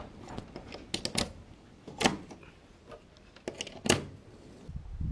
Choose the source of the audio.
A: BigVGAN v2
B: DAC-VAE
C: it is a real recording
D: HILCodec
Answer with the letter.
C